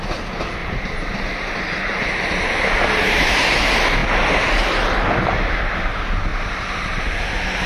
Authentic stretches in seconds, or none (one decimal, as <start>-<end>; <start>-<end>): 0.0-0.6; 3.2-6.3; 7.0-7.7